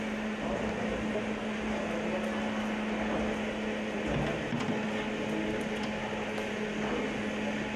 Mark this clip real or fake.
real